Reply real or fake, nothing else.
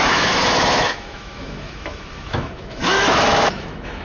fake